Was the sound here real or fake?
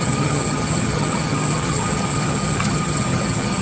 fake